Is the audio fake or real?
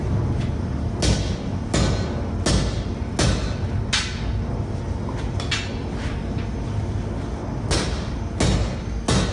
real